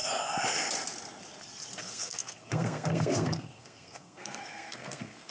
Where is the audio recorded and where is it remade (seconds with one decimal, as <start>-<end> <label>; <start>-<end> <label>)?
0.0-1.8 recorded; 1.8-5.3 remade